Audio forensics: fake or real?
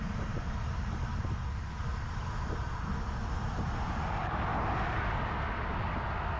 real